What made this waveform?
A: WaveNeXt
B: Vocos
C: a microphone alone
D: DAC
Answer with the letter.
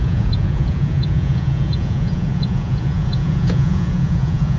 B